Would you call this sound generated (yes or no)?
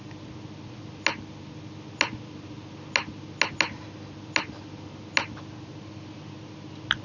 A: no